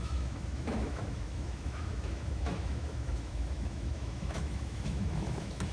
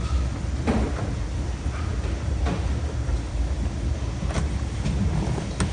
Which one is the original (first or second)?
second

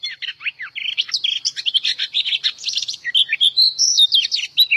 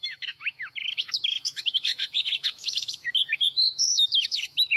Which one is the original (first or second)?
first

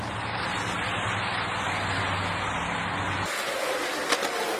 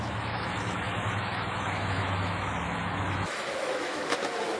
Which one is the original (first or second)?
first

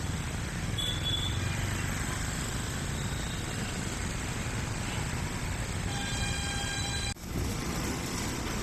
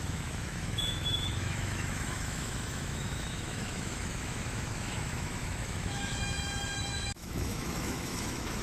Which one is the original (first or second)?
first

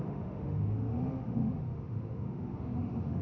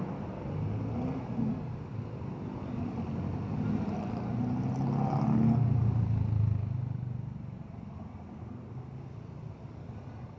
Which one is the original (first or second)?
second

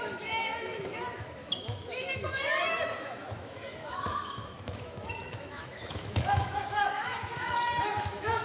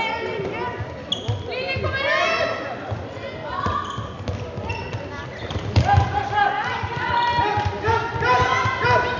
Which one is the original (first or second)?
second